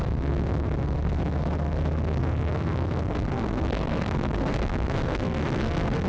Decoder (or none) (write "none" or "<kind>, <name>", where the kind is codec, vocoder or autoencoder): codec, SNAC